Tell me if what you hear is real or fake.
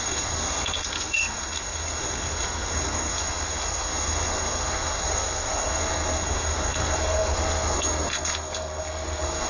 fake